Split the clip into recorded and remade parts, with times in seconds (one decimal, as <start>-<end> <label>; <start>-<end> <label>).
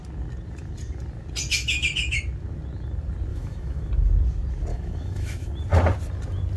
0.0-1.5 recorded; 1.5-2.2 remade; 2.2-3.3 recorded; 3.3-3.9 remade; 3.9-4.7 recorded; 4.7-5.5 remade; 5.5-6.6 recorded